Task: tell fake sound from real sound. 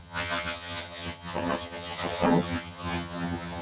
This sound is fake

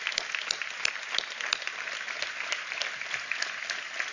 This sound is real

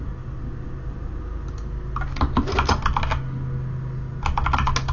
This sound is real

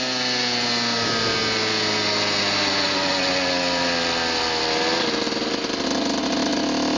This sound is real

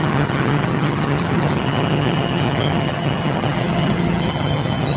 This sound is fake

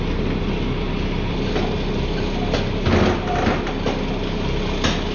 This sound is real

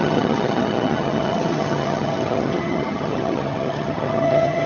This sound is fake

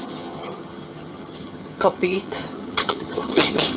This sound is fake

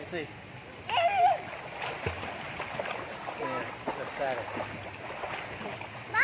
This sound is real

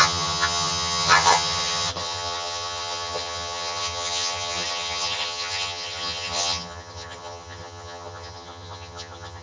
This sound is fake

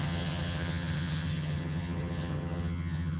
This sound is fake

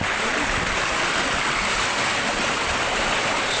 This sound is real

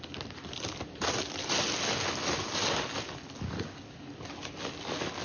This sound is real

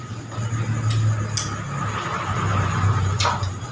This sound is real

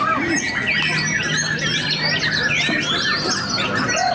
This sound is real